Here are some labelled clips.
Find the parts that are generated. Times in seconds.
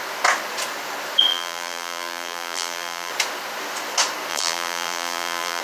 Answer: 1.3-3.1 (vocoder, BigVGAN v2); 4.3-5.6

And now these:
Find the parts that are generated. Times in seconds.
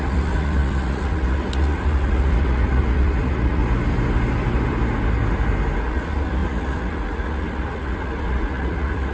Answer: 0.0-3.6 (vocoder, Vocos); 5.9-9.1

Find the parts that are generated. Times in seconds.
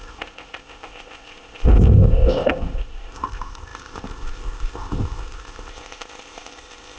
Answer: 0.0-7.0 (codec, ZipCodec)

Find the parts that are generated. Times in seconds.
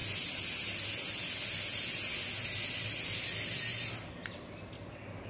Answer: none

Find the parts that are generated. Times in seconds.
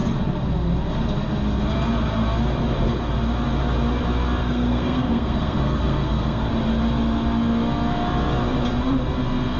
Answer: 4.4-6.5 (codec, SNAC)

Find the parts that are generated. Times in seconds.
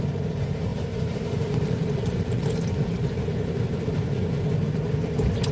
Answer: 0.7-4.0 (vocoder, BigVGAN v2)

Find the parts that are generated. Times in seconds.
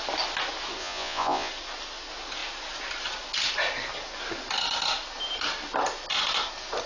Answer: 0.8-1.5 (vocoder, Vocos)